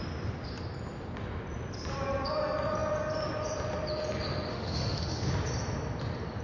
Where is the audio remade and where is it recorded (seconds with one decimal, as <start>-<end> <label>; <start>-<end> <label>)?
0.0-4.5 recorded; 4.5-5.3 remade; 5.3-6.4 recorded

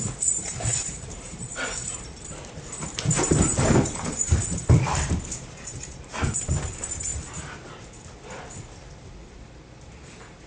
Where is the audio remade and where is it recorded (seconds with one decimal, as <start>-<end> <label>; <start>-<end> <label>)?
0.0-7.1 remade; 7.1-9.8 recorded; 9.8-10.5 remade

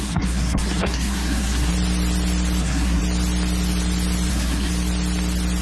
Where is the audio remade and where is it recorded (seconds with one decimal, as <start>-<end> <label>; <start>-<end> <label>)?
0.0-1.7 remade; 1.7-2.6 recorded; 2.6-3.0 remade; 3.0-4.3 recorded; 4.3-4.7 remade; 4.7-5.6 recorded